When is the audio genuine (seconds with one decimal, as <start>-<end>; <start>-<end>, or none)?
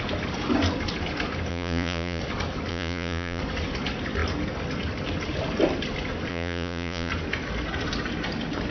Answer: 0.0-1.5; 2.2-2.7; 3.4-6.3; 7.1-8.7